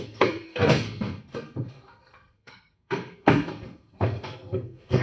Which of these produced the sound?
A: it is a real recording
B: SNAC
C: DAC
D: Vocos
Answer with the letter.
B